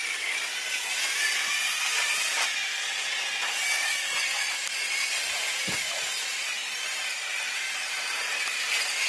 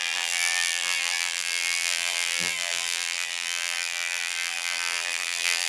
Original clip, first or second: first